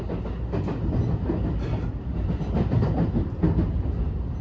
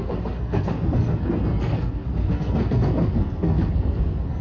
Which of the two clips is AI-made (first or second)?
second